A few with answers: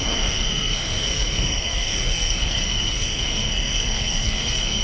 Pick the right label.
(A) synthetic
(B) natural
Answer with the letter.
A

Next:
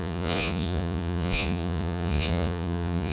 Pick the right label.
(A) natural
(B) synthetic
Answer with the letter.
B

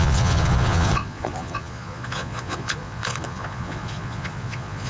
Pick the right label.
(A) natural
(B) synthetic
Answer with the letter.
B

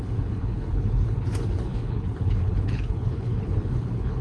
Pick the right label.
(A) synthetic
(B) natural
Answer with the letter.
A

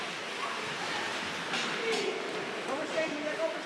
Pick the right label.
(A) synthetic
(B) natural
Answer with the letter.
B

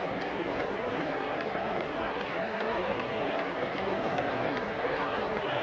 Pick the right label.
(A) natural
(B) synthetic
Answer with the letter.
B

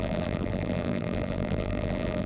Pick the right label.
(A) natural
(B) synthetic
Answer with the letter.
B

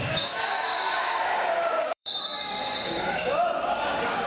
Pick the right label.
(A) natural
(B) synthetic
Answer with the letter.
B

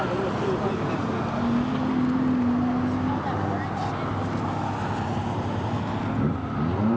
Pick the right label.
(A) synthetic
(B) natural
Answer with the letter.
B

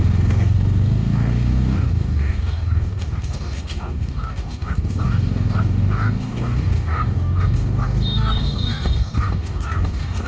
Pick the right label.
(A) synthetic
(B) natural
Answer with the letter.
A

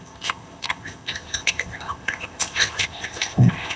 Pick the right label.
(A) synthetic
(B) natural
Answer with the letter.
A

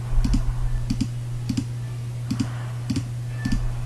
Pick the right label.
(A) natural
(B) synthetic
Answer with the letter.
A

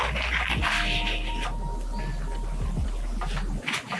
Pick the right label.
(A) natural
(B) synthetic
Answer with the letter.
A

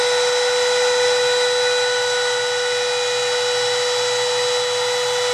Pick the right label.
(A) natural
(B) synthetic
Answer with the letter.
A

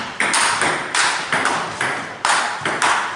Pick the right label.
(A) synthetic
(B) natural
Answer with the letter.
B